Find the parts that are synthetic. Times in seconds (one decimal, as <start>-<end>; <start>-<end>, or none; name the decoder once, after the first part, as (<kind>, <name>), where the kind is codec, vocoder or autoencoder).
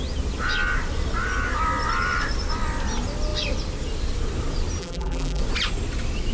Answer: 4.8-5.4 (vocoder, BigVGAN v2)